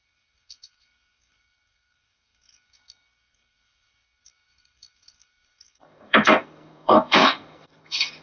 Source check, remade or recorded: remade